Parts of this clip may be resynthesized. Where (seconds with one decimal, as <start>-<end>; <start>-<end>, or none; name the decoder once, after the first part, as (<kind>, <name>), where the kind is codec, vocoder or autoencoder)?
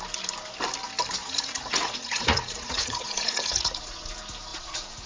1.2-4.1 (vocoder, Vocos); 4.5-5.1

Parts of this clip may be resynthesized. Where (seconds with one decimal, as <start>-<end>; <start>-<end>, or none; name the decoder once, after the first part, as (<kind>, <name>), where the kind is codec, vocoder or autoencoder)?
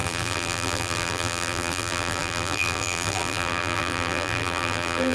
0.0-5.1 (vocoder, BigVGAN v2)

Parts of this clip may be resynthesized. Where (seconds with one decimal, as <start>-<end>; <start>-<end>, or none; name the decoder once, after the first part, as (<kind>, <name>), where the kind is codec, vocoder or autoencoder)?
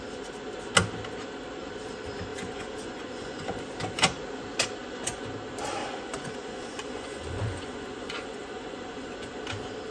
2.3-3.6 (vocoder, Vocos); 4.8-5.3; 5.8-9.4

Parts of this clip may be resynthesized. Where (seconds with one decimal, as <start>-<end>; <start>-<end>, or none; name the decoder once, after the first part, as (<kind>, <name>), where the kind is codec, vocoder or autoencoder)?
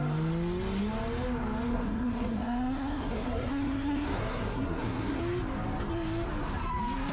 1.7-5.2 (codec, SNAC)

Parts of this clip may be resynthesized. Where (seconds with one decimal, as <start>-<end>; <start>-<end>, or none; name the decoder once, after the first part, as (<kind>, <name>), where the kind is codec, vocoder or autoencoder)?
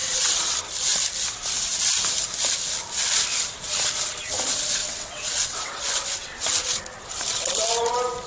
0.0-0.6 (vocoder, WaveNeXt); 4.8-6.8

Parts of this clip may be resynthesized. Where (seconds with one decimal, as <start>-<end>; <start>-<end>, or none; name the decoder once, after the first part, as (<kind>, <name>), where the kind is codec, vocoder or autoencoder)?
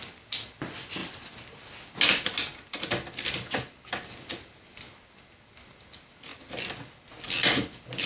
none